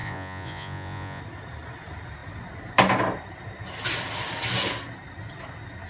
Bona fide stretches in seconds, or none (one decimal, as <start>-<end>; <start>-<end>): 1.2-5.9